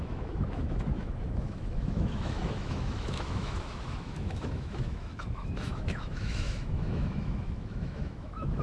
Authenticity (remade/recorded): remade